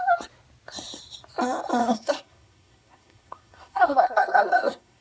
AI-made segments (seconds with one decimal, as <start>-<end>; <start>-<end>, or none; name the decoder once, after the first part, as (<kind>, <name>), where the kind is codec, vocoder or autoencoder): 1.8-5.0 (codec, SNAC)